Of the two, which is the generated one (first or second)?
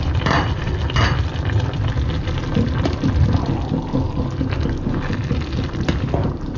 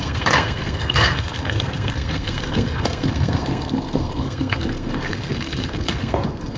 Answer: second